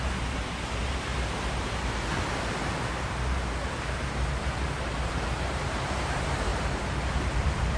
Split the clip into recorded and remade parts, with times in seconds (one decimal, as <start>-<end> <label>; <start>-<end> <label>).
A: 0.0-7.8 remade